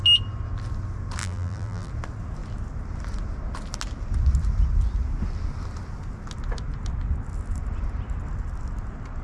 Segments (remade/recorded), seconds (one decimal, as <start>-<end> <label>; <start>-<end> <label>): 0.0-1.2 recorded; 1.2-1.9 remade; 1.9-9.2 recorded